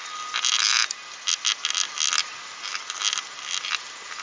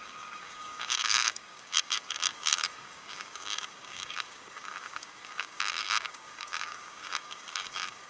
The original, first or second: first